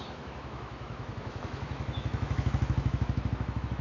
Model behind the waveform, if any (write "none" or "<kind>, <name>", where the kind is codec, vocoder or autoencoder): autoencoder, DAC-VAE